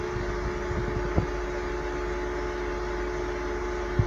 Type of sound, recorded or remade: recorded